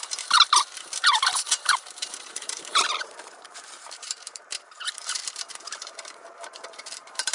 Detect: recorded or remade remade